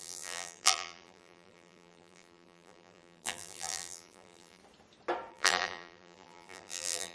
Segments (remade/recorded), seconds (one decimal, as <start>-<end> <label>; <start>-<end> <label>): 0.0-4.6 remade; 4.6-5.3 recorded; 5.3-7.1 remade